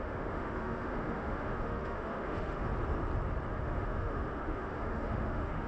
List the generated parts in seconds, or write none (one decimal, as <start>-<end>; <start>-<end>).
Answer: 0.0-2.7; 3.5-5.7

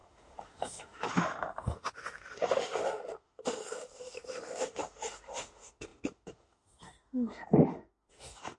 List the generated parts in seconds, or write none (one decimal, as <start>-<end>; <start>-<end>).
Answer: 0.0-8.6

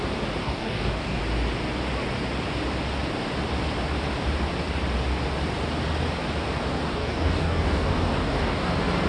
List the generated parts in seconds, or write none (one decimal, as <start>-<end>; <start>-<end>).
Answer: 0.4-1.2; 6.9-8.7

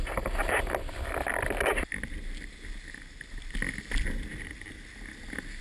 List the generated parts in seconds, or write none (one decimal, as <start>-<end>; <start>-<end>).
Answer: none

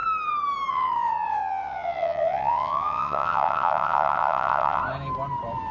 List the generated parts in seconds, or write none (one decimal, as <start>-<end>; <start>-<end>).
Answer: 0.7-4.8

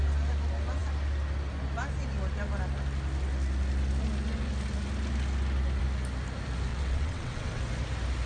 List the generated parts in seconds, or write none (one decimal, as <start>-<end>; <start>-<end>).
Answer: 6.7-7.6